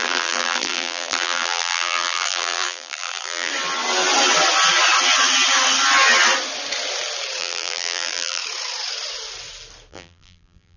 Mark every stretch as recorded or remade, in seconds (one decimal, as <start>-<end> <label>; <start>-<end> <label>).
0.0-3.5 remade; 3.5-7.4 recorded; 7.4-8.4 remade; 8.4-9.9 recorded; 9.9-10.8 remade